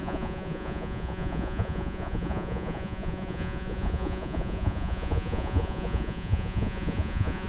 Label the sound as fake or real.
fake